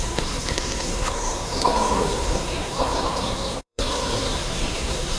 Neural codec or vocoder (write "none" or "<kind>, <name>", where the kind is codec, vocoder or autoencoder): codec, SNAC